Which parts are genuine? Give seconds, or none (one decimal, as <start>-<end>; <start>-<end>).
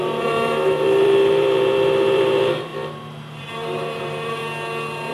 2.7-3.4; 4.4-5.1